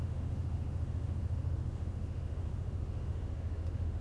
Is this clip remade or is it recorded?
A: remade